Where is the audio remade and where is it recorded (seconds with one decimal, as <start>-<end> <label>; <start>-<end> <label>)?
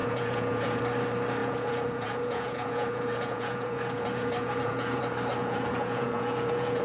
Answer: 0.0-0.8 remade; 0.8-1.4 recorded; 1.4-5.0 remade; 5.0-5.4 recorded; 5.4-6.8 remade